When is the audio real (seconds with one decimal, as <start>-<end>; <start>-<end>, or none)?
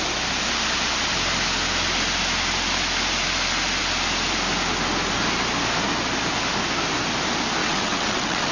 0.0-7.6